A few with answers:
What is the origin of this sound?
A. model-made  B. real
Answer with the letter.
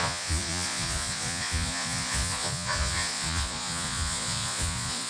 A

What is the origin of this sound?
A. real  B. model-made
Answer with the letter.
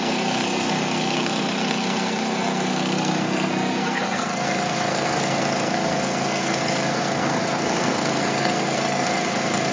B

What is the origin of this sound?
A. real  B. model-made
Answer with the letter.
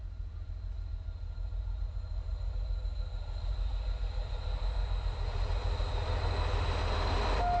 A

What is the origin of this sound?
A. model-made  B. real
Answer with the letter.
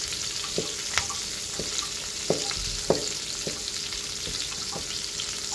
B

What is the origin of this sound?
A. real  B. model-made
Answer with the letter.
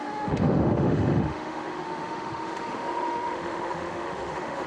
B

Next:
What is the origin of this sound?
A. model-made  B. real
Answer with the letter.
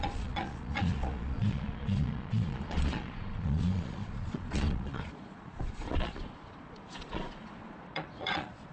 A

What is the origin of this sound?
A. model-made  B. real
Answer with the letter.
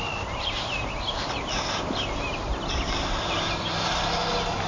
B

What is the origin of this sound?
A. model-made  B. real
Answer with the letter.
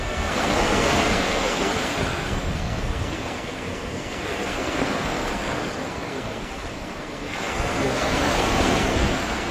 A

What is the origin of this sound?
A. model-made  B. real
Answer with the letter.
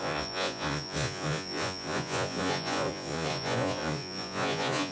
A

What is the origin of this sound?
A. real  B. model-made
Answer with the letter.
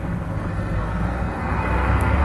B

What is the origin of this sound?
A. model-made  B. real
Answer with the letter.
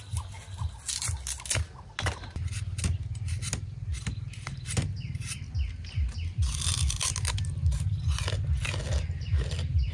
B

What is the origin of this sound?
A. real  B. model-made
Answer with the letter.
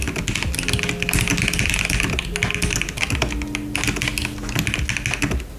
A